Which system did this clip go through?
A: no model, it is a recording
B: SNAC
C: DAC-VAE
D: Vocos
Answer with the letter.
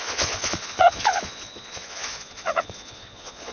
D